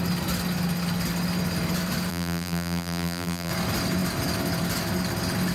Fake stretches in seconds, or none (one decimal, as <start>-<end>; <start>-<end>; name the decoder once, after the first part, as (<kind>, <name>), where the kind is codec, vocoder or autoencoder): 2.1-3.5 (vocoder, BigVGAN v2)